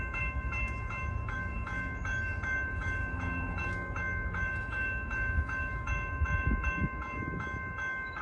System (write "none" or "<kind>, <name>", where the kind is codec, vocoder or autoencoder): autoencoder, DAC-VAE